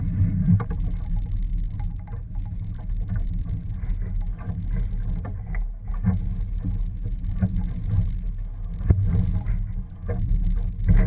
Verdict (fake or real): real